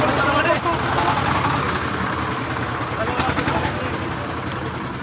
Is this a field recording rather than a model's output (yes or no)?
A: yes